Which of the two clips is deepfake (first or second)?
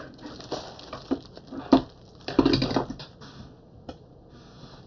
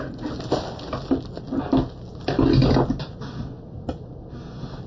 first